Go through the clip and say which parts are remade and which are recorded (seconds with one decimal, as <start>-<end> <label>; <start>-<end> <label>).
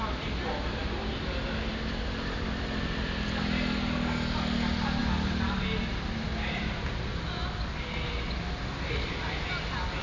0.0-10.0 recorded